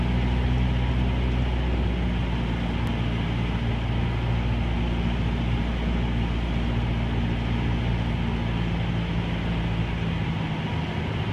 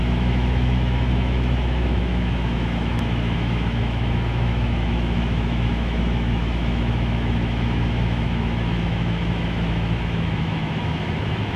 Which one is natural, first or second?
first